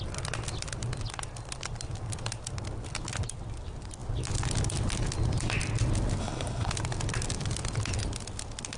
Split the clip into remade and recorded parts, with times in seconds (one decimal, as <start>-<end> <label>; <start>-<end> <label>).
0.0-6.2 recorded; 6.2-6.7 remade; 6.7-8.8 recorded